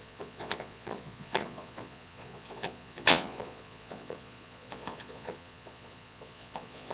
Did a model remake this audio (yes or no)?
yes